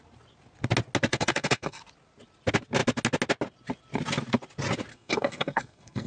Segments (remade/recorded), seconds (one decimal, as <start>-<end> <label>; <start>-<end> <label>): 0.0-1.1 recorded; 1.1-1.8 remade; 1.8-4.9 recorded; 4.9-6.1 remade